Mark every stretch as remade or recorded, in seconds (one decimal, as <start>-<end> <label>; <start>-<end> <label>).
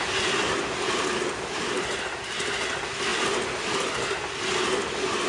0.0-5.3 recorded